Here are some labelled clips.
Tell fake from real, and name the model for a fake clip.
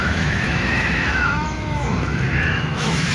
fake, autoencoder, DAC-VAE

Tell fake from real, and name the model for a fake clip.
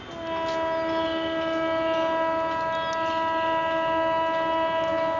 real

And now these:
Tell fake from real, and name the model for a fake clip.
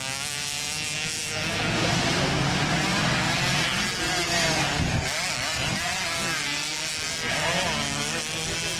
real